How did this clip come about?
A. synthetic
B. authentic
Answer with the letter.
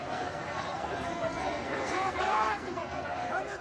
A